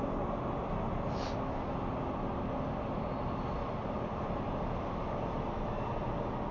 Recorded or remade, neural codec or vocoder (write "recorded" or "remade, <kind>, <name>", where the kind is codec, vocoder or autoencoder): recorded